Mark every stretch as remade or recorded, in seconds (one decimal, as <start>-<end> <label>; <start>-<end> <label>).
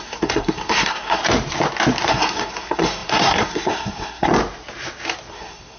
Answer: 0.0-1.2 remade; 1.2-2.1 recorded; 2.1-4.3 remade; 4.3-5.3 recorded; 5.3-5.8 remade